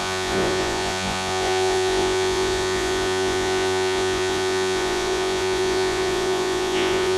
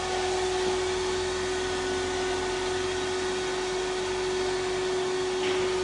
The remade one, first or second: first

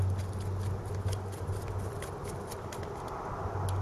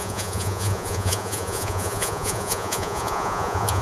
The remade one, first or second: second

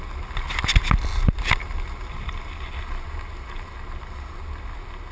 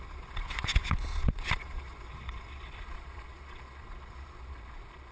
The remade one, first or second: second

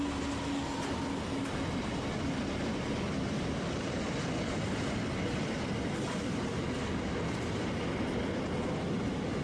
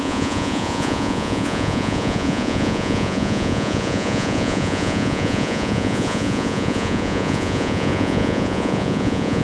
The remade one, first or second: second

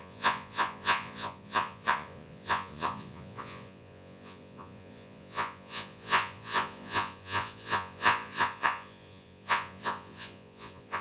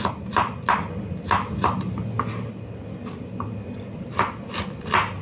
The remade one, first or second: first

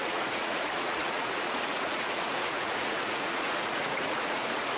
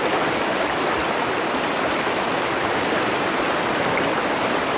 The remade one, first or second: first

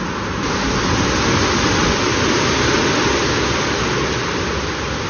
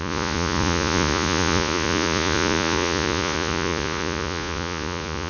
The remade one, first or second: second